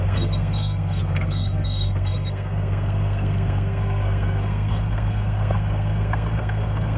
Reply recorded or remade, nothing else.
remade